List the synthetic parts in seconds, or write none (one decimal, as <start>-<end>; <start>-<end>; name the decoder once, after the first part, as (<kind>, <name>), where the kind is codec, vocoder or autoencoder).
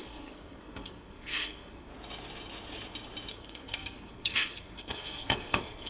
0.0-1.9 (codec, SNAC); 3.3-5.9